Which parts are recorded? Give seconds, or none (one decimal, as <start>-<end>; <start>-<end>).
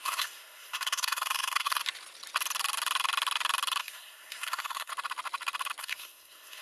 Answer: 1.8-3.8; 4.9-5.8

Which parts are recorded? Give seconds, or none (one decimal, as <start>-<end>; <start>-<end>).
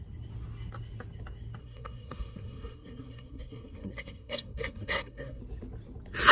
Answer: 0.0-1.6; 5.4-6.3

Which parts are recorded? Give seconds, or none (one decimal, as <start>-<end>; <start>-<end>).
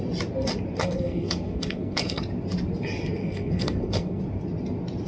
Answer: 0.0-0.8; 2.2-3.2; 4.2-5.1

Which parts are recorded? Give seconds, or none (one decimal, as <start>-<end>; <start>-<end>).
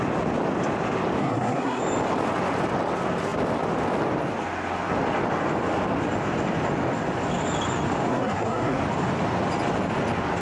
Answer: 0.0-1.2; 1.8-8.1; 8.8-10.4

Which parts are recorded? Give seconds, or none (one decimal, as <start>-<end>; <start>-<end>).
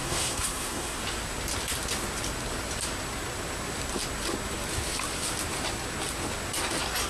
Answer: 1.0-7.1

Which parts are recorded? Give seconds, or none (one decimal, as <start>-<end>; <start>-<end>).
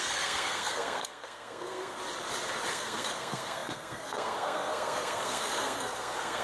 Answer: 2.0-2.7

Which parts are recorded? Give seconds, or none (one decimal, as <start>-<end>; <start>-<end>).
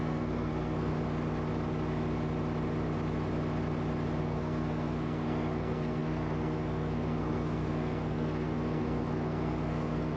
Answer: 0.9-4.2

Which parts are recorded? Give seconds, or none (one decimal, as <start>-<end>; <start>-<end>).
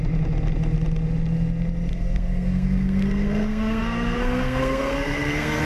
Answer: 0.0-1.9